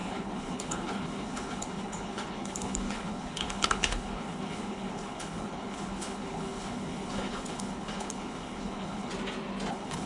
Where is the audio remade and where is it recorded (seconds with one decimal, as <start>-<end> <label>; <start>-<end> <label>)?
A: 0.0-9.1 remade; 9.1-9.7 recorded; 9.7-10.1 remade